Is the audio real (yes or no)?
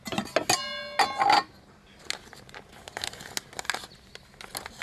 yes